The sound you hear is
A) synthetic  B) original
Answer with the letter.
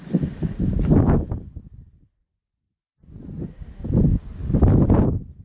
B